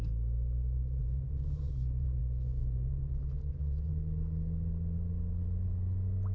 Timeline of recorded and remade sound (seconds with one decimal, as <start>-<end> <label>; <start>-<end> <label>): 0.0-1.0 recorded; 1.0-2.2 remade; 2.2-2.6 recorded; 2.6-3.9 remade; 3.9-6.3 recorded